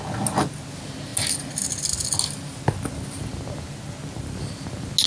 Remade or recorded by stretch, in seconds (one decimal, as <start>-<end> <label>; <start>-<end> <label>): 0.0-5.1 recorded